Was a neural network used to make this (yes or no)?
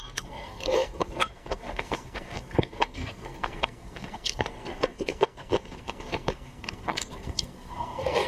yes